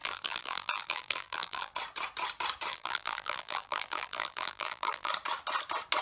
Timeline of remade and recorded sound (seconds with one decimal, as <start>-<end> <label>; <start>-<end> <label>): 0.0-1.7 remade; 1.7-2.7 recorded; 2.7-5.1 remade; 5.1-6.0 recorded